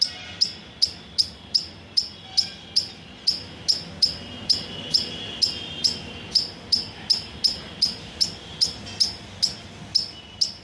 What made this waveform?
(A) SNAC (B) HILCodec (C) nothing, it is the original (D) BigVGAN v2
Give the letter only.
C